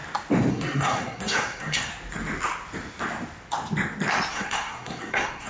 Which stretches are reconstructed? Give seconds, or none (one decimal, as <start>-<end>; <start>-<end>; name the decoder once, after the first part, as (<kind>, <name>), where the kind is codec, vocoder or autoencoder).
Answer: 0.5-1.9 (codec, SNAC); 4.3-5.5